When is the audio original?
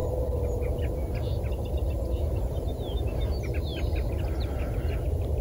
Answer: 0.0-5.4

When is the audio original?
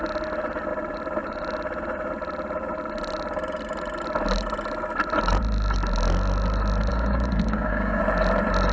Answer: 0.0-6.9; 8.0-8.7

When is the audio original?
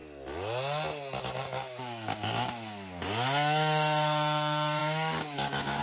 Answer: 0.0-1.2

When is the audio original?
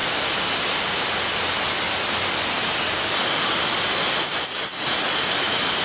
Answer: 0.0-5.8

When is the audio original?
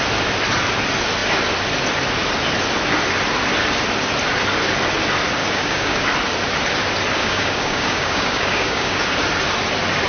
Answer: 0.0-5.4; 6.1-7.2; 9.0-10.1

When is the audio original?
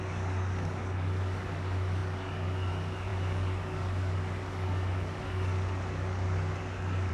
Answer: none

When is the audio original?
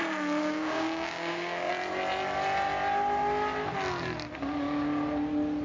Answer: 0.0-0.4; 1.7-5.6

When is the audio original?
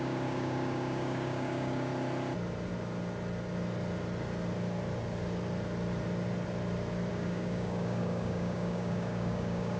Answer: 1.9-7.1